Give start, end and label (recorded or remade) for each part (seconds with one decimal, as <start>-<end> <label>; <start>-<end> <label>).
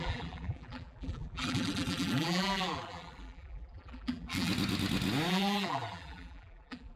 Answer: 0.0-4.5 remade; 4.5-5.3 recorded; 5.3-7.0 remade